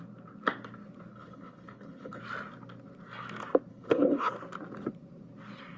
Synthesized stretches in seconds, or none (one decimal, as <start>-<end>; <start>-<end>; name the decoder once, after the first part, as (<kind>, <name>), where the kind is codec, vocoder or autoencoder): 1.1-2.2 (codec, HILCodec); 3.7-4.3